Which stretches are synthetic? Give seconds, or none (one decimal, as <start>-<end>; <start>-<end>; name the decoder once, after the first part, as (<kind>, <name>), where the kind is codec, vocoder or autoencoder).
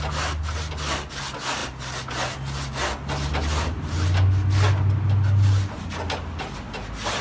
none